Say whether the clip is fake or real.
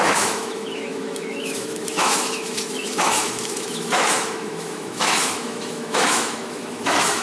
fake